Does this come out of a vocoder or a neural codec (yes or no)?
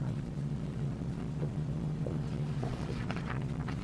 yes